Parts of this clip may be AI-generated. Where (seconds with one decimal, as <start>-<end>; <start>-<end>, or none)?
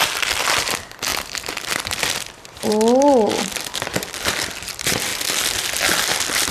0.0-1.1; 2.7-5.1; 6.0-6.5